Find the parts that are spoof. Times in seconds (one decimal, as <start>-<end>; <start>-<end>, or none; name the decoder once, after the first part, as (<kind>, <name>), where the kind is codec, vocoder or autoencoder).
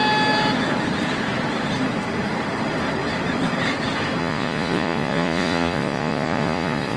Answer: 4.2-7.0 (vocoder, Vocos)